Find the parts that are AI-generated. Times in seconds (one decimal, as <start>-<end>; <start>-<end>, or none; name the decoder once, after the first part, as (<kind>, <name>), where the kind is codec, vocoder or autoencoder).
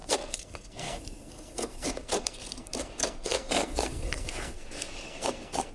0.0-5.7 (codec, SNAC)